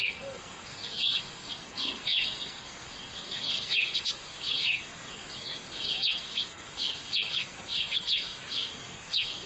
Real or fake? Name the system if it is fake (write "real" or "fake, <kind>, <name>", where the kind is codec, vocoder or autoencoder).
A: fake, codec, SNAC